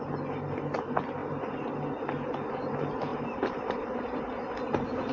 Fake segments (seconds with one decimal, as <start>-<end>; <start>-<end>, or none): 3.1-4.2